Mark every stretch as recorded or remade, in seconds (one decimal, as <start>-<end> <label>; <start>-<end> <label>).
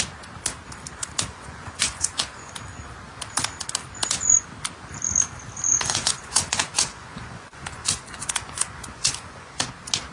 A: 0.0-1.3 recorded; 1.3-2.5 remade; 2.5-5.7 recorded; 5.7-9.7 remade; 9.7-10.1 recorded